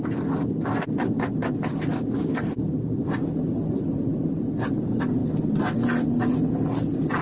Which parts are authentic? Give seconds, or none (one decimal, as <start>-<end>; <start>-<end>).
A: 0.0-7.2